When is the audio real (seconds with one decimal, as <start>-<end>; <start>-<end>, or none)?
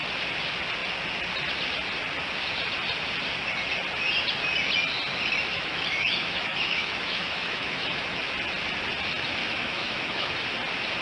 0.0-5.5; 8.2-9.4; 10.3-11.0